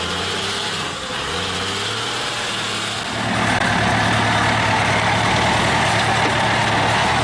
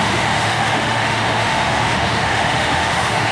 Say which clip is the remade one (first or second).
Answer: second